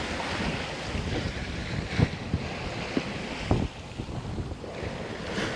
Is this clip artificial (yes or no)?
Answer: no